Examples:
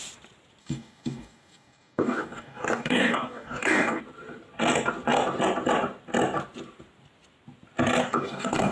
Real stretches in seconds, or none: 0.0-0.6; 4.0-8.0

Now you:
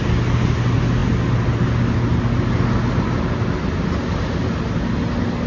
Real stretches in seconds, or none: 0.0-5.5

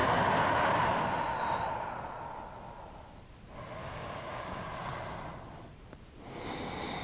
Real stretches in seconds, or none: 0.0-3.8; 4.6-7.0

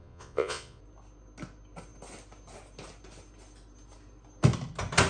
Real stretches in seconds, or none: 0.8-5.1

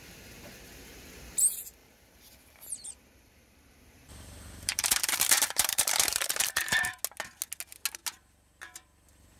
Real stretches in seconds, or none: 0.0-1.8; 7.0-9.4